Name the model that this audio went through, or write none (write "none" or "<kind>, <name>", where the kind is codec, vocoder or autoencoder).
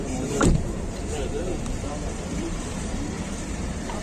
vocoder, BigVGAN v2